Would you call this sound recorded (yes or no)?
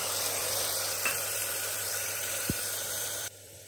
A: no